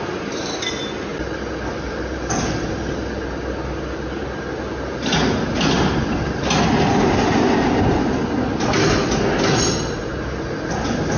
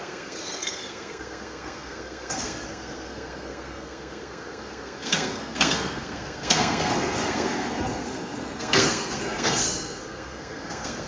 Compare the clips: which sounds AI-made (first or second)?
second